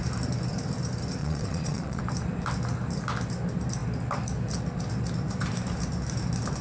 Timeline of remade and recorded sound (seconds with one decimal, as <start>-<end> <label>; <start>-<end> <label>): 0.0-1.2 recorded; 1.2-2.0 remade; 2.0-6.6 recorded